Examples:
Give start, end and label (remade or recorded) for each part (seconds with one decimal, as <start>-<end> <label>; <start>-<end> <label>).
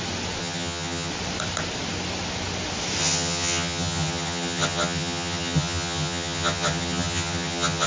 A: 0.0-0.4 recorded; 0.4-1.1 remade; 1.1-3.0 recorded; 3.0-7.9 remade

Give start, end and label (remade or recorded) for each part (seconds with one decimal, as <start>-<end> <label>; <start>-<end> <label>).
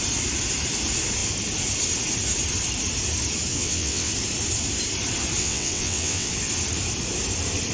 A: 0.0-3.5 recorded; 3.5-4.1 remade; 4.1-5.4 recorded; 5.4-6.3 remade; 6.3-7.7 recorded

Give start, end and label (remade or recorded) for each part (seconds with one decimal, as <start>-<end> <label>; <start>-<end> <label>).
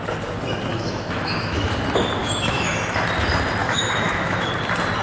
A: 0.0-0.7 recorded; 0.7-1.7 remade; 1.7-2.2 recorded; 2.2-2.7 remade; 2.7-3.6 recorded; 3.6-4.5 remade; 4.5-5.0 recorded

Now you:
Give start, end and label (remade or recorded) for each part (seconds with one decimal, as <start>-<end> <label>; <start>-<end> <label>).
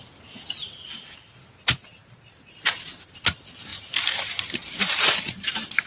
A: 0.0-3.7 recorded; 3.7-5.1 remade; 5.1-5.9 recorded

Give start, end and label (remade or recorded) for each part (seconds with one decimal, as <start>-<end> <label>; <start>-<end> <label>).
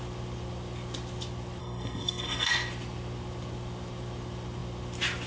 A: 0.0-1.6 recorded; 1.6-2.5 remade; 2.5-5.3 recorded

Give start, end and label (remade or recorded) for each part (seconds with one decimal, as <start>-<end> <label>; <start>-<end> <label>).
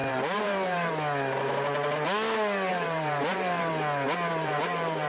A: 0.0-0.9 remade; 0.9-2.7 recorded; 2.7-3.7 remade; 3.7-4.3 recorded; 4.3-5.1 remade